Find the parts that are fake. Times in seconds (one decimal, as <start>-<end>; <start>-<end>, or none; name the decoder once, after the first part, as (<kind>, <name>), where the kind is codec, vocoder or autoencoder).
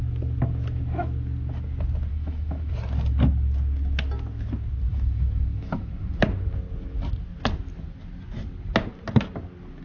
2.1-2.7 (autoencoder, DAC-VAE); 4.9-5.9